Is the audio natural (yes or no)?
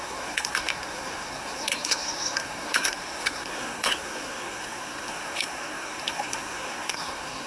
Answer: no